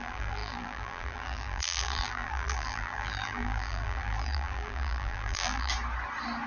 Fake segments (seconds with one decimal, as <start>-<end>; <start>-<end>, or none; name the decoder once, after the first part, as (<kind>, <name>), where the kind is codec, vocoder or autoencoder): 0.0-5.7 (vocoder, BigVGAN v2)